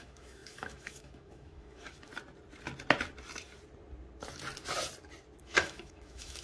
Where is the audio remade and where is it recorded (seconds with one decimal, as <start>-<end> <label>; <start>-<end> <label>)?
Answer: 0.0-2.1 remade; 2.1-5.4 recorded; 5.4-6.4 remade